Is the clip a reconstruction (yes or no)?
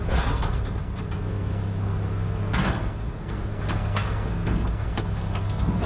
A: yes